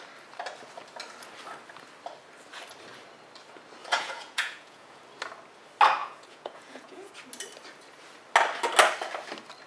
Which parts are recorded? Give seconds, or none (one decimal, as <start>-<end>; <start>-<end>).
0.0-3.8; 5.0-6.0; 7.1-9.7